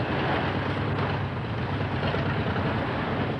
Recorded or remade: recorded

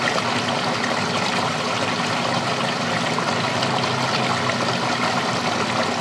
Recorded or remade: recorded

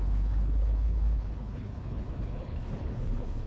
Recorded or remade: remade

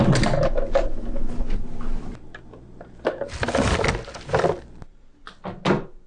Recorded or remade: recorded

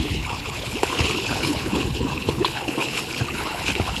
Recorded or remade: remade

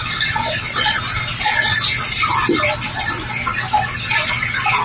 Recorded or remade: recorded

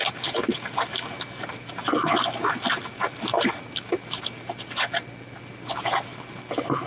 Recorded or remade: recorded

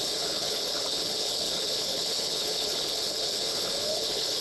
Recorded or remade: remade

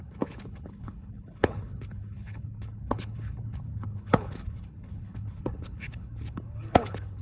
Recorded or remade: remade